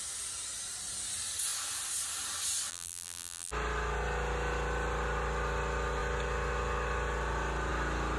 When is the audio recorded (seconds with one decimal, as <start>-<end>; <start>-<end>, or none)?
0.0-2.7; 3.5-8.2